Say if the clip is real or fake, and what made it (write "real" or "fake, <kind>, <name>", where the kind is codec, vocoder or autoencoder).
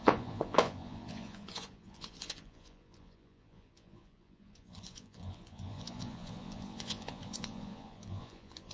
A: fake, vocoder, Vocos